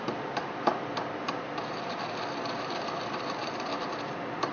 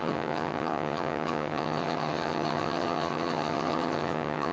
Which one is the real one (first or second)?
first